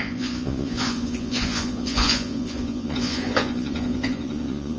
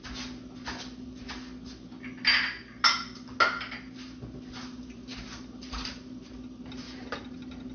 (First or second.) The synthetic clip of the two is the first